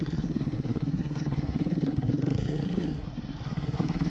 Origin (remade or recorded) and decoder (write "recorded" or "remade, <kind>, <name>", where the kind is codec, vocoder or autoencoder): remade, codec, SNAC